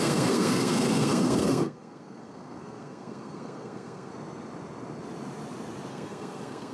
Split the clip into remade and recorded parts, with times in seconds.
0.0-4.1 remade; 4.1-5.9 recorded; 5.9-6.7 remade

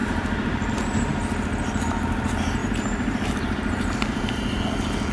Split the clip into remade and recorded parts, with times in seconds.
0.0-0.7 remade; 0.7-2.6 recorded; 2.6-4.6 remade; 4.6-5.1 recorded

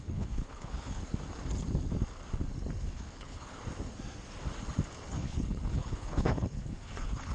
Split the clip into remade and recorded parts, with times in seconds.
0.0-1.0 remade; 1.0-2.9 recorded; 2.9-3.6 remade; 3.6-5.1 recorded; 5.1-7.3 remade